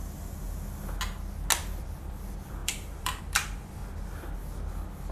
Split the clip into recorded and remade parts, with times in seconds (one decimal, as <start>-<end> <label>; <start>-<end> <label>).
0.0-1.8 recorded; 1.8-3.8 remade; 3.8-5.1 recorded